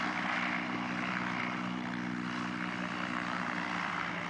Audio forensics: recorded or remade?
recorded